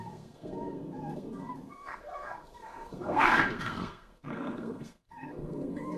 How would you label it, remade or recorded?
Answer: remade